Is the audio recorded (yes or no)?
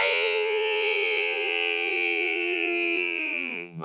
no